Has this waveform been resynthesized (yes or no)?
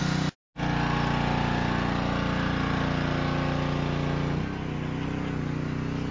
no